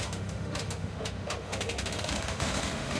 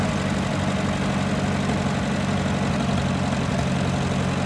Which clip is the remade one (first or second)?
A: first